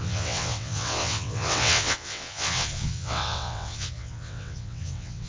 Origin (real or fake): fake